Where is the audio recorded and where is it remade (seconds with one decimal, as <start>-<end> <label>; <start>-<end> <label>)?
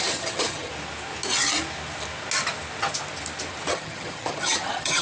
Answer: 0.0-0.7 remade; 0.7-3.7 recorded; 3.7-5.0 remade